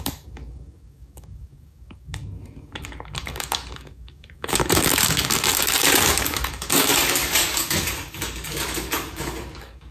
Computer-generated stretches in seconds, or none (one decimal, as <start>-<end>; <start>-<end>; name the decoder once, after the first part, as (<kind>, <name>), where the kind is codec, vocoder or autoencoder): 0.0-9.9 (codec, DAC)